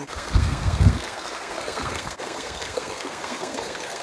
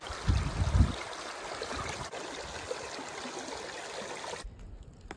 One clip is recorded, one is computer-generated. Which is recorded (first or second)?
second